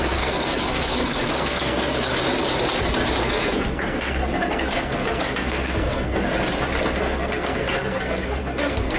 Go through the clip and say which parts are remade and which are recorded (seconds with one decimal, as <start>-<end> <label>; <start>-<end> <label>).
0.0-2.1 remade; 2.1-3.2 recorded; 3.2-6.3 remade; 6.3-7.0 recorded; 7.0-9.0 remade